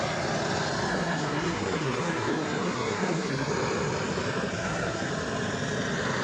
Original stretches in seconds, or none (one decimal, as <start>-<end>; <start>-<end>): 0.0-0.9; 3.5-4.5; 5.1-6.2